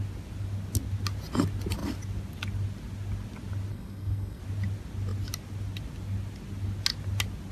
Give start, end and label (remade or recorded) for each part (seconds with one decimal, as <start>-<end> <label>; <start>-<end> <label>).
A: 0.0-3.7 recorded; 3.7-4.4 remade; 4.4-7.5 recorded